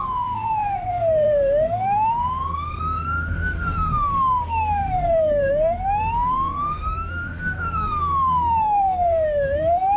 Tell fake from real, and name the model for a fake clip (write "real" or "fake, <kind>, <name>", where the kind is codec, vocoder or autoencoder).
fake, codec, SNAC